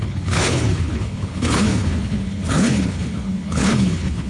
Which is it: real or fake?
fake